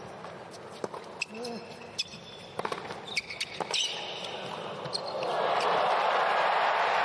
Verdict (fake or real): real